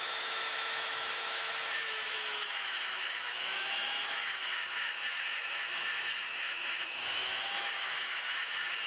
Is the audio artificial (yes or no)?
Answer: yes